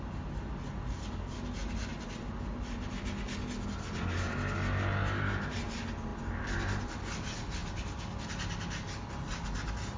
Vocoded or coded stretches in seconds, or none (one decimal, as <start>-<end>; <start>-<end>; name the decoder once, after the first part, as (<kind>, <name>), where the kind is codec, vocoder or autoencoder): none